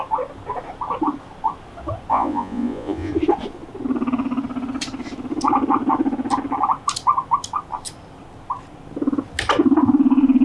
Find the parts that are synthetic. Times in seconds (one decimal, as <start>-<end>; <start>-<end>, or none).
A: 2.1-3.1